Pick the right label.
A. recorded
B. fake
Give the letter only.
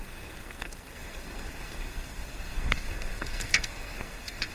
B